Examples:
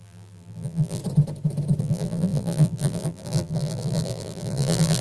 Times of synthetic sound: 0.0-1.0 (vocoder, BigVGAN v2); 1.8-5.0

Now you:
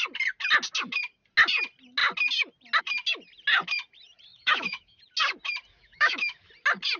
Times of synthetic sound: 4.3-5.0 (autoencoder, DAC-VAE); 5.7-6.5

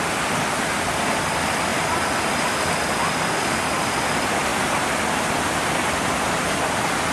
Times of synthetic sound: none

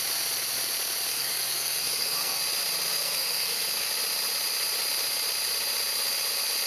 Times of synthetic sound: 1.1-2.4 (codec, SNAC); 2.9-3.9

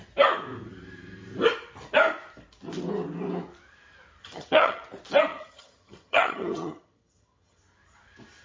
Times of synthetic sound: 4.2-4.8 (vocoder, HiFi-GAN); 5.3-7.6

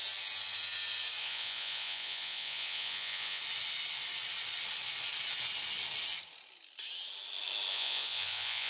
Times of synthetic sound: 1.2-3.4 (vocoder, Vocos); 7.7-8.7